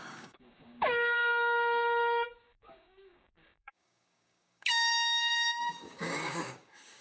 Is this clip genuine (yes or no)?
no